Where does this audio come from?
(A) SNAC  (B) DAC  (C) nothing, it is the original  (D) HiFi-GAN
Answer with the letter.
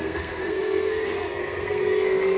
A